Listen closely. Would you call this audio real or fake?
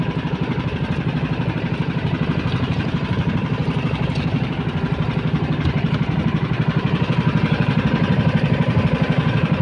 fake